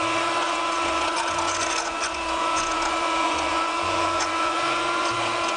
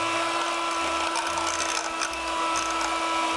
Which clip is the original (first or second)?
second